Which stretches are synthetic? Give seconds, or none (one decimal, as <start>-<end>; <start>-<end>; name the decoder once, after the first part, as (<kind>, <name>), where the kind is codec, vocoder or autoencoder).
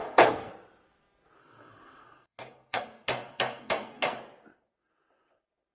0.0-0.5 (codec, SNAC); 1.4-4.2